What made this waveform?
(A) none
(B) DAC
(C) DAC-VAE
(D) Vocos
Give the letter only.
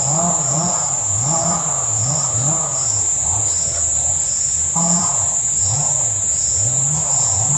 D